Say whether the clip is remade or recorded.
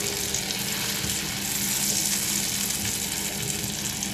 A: recorded